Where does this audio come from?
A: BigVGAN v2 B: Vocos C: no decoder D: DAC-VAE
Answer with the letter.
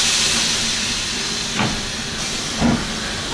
C